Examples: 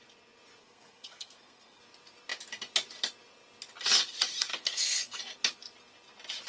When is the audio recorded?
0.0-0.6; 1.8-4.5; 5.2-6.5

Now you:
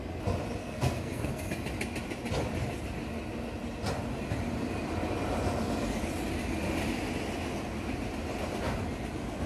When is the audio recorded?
0.0-0.6; 1.5-9.5

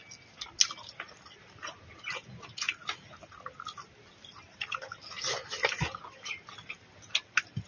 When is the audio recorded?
0.0-7.7

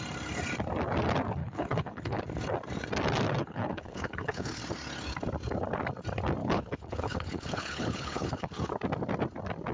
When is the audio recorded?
0.0-1.4; 2.2-3.4; 4.6-6.4; 8.7-9.7